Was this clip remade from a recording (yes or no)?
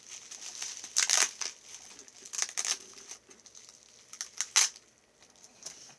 no